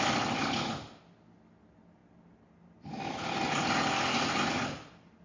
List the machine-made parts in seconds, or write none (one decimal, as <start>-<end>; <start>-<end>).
none